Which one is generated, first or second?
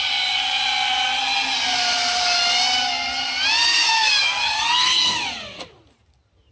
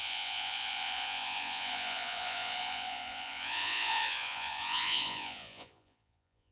second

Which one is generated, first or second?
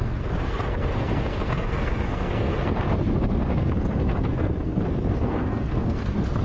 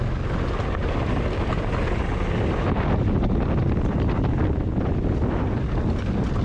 first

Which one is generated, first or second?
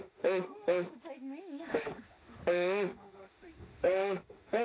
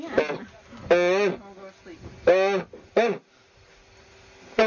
first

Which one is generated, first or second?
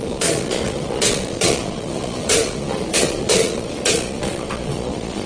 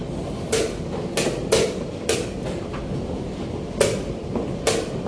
first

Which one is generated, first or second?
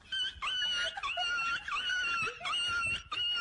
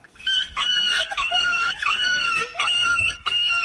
second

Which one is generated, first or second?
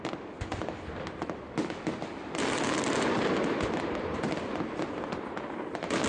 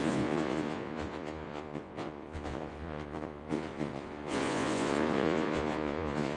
second